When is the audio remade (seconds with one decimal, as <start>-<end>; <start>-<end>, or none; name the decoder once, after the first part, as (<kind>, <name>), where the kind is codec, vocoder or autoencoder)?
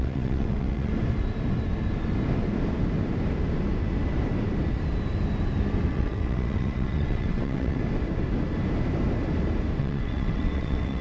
0.0-0.9 (vocoder, WaveNeXt); 5.9-7.8; 9.8-11.0